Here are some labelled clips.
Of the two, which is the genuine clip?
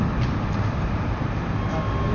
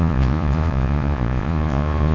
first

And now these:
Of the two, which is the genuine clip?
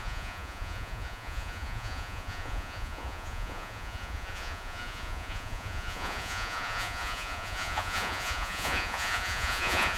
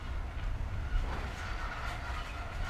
second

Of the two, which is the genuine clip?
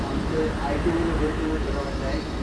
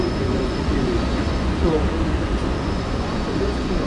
first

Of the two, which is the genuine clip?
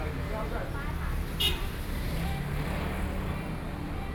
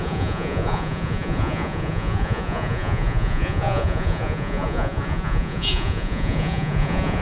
first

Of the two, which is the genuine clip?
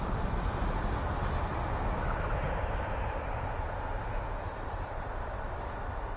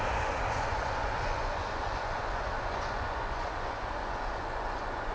first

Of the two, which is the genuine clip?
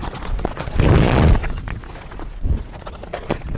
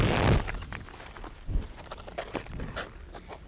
second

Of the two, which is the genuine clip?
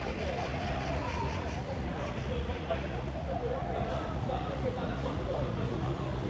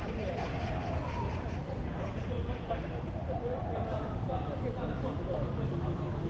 second